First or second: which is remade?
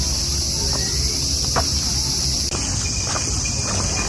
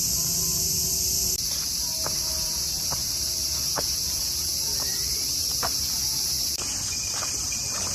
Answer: second